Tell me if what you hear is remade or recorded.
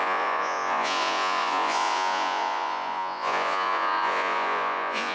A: remade